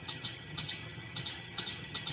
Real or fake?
fake